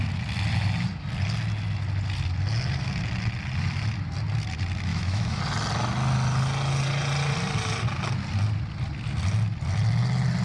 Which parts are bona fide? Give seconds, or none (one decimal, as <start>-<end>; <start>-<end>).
0.0-4.9; 5.4-10.4